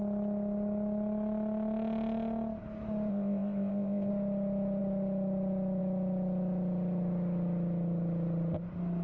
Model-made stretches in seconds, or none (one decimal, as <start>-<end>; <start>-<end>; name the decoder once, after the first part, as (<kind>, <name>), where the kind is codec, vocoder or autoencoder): 3.1-4.1 (codec, ZipCodec)